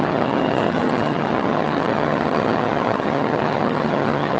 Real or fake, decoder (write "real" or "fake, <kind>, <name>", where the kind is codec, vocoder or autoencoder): fake, vocoder, HiFi-GAN